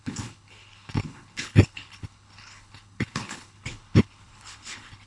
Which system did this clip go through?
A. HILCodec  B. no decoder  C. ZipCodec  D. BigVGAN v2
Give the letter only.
A